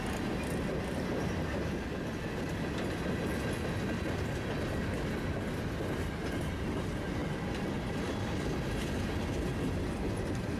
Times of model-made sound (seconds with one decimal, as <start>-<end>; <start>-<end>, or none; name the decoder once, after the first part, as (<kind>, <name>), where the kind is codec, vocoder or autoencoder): none